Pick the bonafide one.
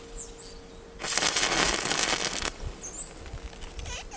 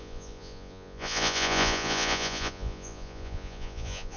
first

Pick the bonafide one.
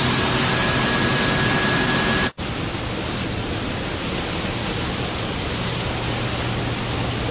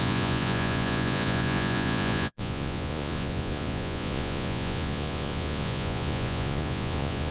first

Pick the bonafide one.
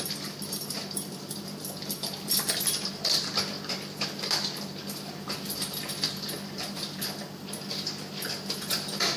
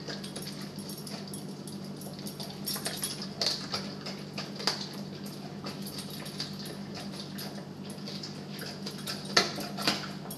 second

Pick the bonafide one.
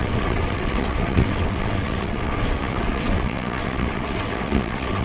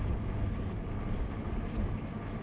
second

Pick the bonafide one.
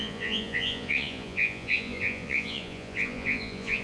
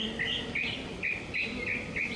second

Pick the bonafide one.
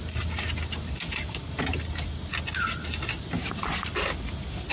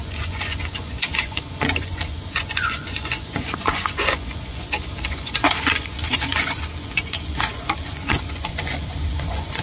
first